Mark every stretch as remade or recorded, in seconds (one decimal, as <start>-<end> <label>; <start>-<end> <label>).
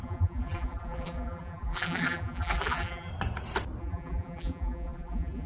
0.0-3.1 remade; 3.1-3.8 recorded; 3.8-5.5 remade